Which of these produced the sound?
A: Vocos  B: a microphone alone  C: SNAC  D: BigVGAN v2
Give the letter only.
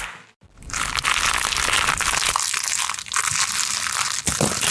B